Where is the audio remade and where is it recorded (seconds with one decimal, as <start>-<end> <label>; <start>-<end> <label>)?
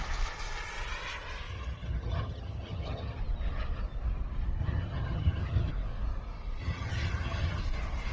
0.0-1.5 recorded; 1.5-3.2 remade; 3.2-4.6 recorded; 4.6-5.7 remade; 5.7-6.6 recorded; 6.6-7.6 remade; 7.6-8.1 recorded